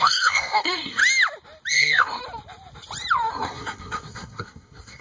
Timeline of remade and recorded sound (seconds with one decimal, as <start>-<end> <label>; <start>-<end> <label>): 0.0-1.0 remade; 1.0-1.7 recorded; 1.7-2.2 remade; 2.2-3.3 recorded; 3.3-5.0 remade